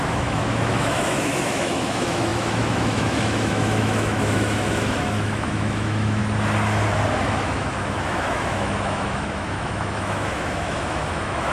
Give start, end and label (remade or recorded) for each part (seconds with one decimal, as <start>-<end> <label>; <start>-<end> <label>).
0.0-6.2 remade; 6.2-7.2 recorded; 7.2-11.5 remade